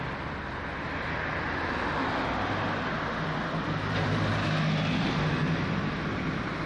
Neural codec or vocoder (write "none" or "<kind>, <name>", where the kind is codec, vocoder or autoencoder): none